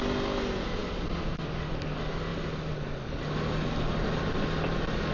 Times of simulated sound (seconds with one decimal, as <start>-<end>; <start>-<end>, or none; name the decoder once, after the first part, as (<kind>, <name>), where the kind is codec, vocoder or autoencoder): none